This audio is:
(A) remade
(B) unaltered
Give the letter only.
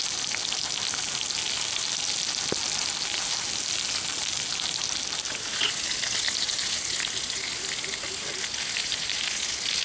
B